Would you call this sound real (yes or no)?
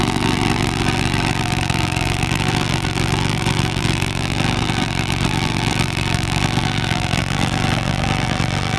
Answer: no